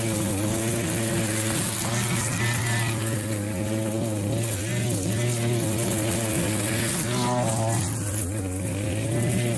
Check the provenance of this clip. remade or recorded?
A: recorded